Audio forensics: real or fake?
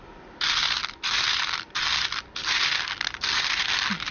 real